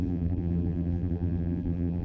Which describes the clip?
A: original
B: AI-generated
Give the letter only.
B